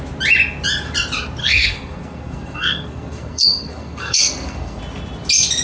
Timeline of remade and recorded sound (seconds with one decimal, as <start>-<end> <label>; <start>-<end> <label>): 0.0-1.4 recorded; 1.4-4.8 remade; 4.8-5.6 recorded